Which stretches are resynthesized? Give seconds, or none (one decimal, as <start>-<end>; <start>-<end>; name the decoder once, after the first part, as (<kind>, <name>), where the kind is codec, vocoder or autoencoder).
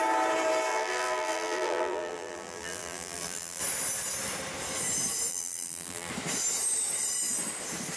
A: 0.7-3.6 (vocoder, BigVGAN v2); 5.3-6.1